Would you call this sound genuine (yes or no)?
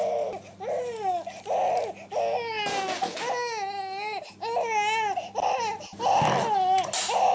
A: yes